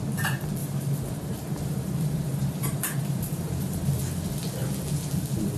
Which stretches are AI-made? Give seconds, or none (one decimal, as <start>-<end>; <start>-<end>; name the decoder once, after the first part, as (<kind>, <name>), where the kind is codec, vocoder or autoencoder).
0.6-4.0 (vocoder, BigVGAN v2)